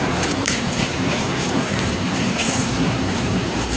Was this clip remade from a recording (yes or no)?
yes